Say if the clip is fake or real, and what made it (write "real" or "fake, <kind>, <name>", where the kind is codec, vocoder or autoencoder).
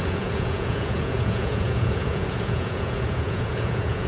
fake, vocoder, Vocos